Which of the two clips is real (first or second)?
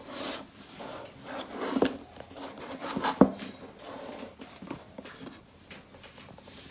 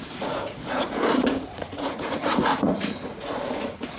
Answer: first